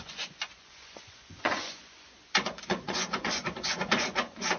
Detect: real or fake fake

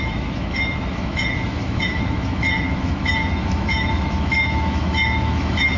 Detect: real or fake fake